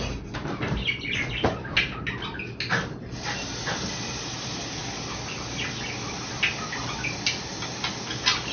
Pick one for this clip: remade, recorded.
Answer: recorded